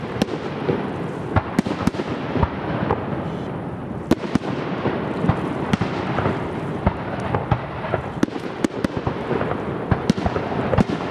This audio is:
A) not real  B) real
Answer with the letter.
B